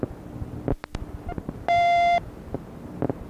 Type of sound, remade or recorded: recorded